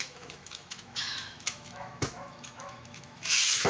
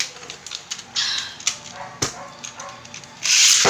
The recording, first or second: second